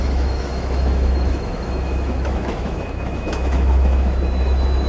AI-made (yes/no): yes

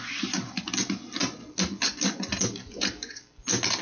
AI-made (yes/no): no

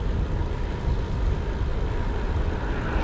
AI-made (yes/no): no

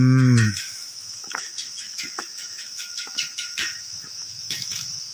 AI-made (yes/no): yes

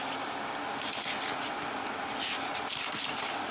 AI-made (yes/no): no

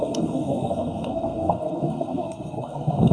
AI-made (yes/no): yes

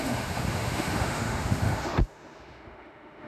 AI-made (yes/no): yes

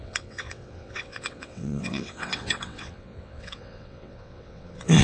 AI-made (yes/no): yes